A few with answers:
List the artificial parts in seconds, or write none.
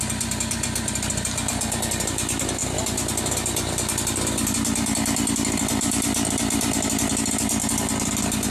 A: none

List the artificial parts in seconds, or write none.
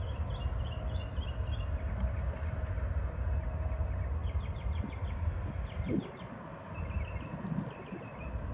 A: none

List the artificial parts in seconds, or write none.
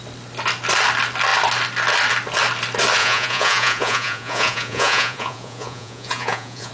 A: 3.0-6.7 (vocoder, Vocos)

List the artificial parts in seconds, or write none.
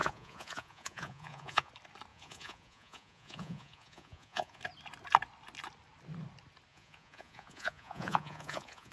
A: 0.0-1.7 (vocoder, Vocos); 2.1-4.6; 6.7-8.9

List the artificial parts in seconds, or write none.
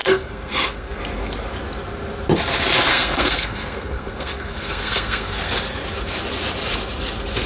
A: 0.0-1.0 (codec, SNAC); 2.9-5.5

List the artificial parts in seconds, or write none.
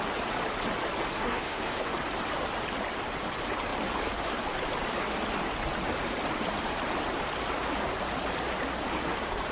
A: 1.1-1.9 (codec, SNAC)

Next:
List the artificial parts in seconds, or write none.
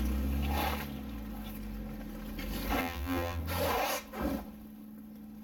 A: 2.8-3.4 (vocoder, BigVGAN v2)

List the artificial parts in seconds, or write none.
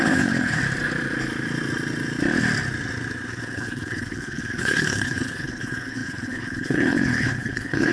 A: 0.0-0.6 (codec, HILCodec); 3.3-7.9